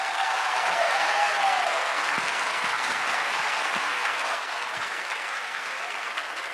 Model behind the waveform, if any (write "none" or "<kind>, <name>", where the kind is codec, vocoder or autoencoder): codec, SNAC